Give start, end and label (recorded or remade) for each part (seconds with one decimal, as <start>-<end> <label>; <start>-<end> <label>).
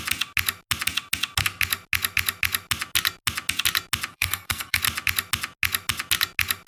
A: 0.0-4.1 recorded; 4.1-4.8 remade; 4.8-6.7 recorded